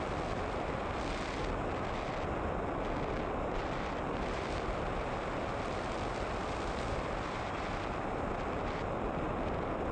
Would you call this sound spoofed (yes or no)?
no